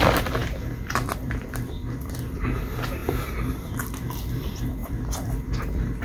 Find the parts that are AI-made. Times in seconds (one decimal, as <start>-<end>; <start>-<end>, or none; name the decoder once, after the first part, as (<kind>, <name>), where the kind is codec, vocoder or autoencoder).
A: 0.0-6.0 (vocoder, BigVGAN v2)